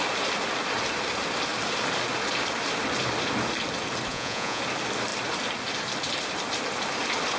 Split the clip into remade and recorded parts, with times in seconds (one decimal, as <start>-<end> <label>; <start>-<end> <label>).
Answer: 0.0-4.1 recorded; 4.1-4.6 remade; 4.6-7.4 recorded